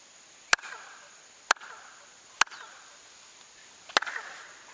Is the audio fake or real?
real